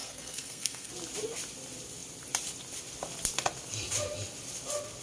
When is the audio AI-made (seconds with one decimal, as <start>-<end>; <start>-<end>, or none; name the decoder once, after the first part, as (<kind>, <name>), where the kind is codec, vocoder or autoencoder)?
0.0-0.9 (codec, SNAC)